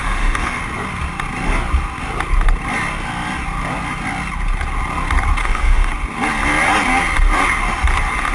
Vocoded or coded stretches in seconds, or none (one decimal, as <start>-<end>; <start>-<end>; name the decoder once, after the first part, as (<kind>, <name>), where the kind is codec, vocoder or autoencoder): 0.0-0.6 (autoencoder, DAC-VAE); 5.4-5.9